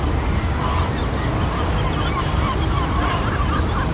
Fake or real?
real